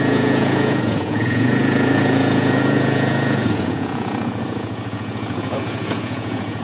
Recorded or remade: remade